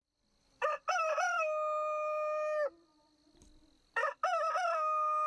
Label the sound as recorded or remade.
remade